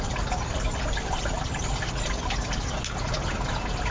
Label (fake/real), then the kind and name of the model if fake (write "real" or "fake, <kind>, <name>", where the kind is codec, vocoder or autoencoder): real